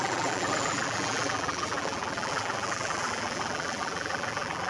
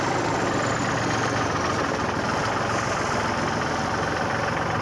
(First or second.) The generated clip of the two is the first